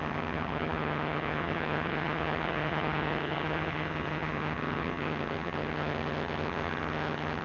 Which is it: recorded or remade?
remade